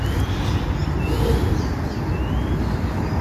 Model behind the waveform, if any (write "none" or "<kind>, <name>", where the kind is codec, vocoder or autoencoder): none